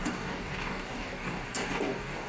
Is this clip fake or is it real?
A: fake